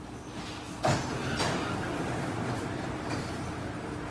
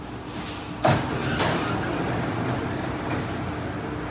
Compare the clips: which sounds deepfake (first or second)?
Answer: first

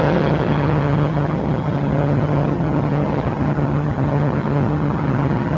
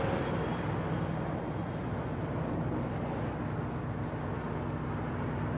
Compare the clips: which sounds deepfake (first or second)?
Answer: first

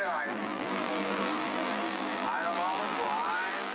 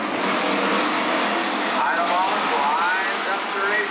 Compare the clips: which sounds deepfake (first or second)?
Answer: first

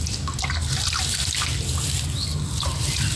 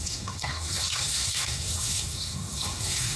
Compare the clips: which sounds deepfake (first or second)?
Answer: second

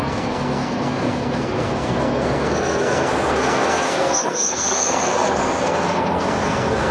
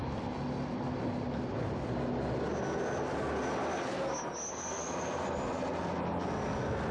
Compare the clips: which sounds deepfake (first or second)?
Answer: first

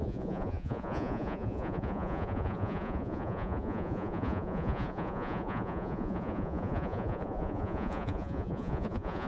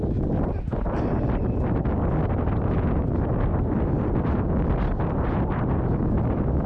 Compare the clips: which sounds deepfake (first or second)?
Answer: first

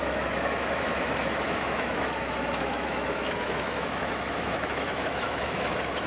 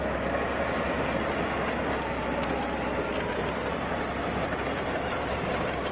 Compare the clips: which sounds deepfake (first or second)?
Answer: first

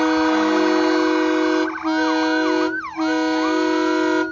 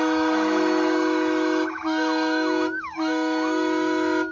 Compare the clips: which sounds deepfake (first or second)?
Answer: second